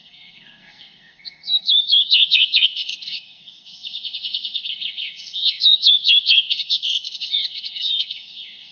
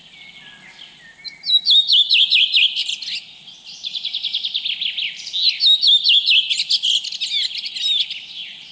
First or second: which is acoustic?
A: second